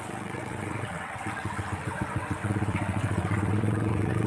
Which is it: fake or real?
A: fake